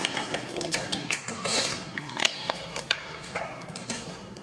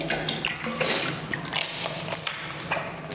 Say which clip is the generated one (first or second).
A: first